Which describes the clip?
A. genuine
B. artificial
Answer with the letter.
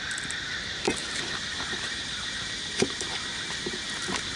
B